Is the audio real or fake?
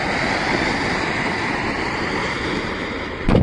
real